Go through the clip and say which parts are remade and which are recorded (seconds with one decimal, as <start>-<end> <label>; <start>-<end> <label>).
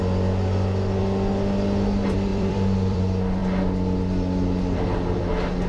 0.0-2.3 recorded; 2.3-3.0 remade; 3.0-5.7 recorded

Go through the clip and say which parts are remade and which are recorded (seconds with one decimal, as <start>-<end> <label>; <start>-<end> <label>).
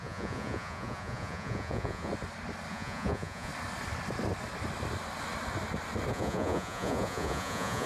0.0-2.1 remade; 2.1-2.7 recorded; 2.7-3.5 remade; 3.5-6.1 recorded; 6.1-7.9 remade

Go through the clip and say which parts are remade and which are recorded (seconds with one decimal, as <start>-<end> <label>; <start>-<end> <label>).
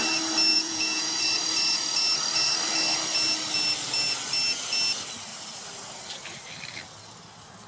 0.0-0.5 recorded; 0.5-1.2 remade; 1.2-7.7 recorded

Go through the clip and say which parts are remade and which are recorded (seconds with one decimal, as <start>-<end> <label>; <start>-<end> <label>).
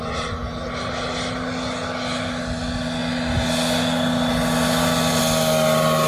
0.0-6.1 recorded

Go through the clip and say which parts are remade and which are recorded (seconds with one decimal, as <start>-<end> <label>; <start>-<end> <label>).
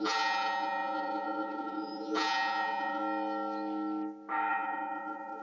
0.0-3.0 remade; 3.0-4.5 recorded; 4.5-5.4 remade